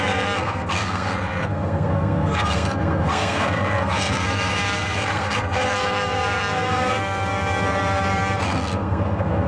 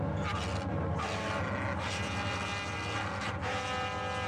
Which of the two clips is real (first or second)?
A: second